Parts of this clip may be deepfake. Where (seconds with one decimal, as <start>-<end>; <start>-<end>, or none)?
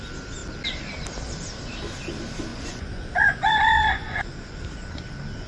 2.5-4.5